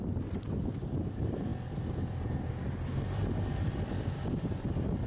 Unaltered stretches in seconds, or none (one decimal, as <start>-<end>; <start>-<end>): 0.0-1.5; 4.6-5.1